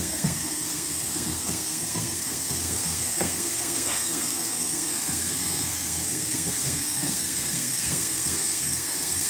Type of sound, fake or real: fake